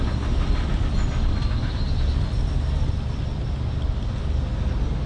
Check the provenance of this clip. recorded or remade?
recorded